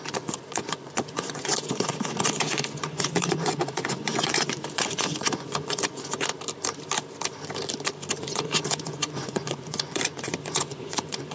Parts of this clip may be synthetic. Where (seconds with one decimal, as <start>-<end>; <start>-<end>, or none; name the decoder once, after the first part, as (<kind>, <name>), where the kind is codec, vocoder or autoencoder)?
0.0-6.3 (vocoder, Vocos); 8.2-11.3